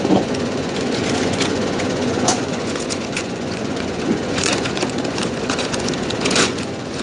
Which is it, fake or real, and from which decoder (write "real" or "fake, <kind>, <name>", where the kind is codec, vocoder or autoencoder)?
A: fake, vocoder, Vocos